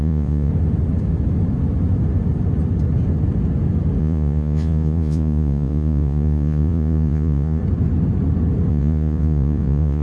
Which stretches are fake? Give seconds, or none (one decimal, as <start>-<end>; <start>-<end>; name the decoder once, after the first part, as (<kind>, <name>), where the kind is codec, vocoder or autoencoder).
0.0-0.5 (vocoder, Vocos); 4.0-7.6; 8.7-10.0